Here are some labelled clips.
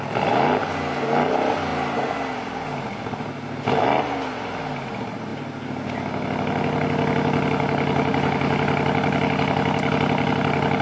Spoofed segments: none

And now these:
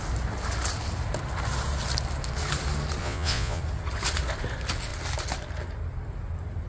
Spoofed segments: 3.0-3.6 (vocoder, Vocos)

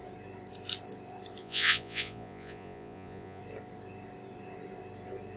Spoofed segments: 1.4-3.4 (vocoder, Vocos)

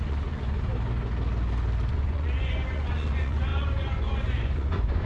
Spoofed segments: 0.0-0.7 (vocoder, Vocos); 1.9-5.1

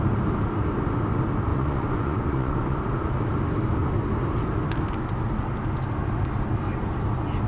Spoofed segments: 1.5-2.8 (vocoder, Vocos)

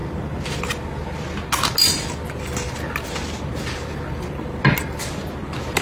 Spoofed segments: none

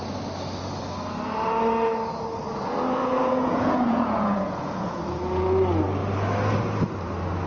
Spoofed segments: 3.0-5.0 (vocoder, Vocos)

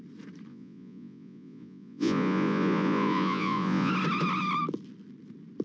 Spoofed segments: 0.5-3.9 (vocoder, Vocos)